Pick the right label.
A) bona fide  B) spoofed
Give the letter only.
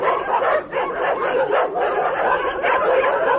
A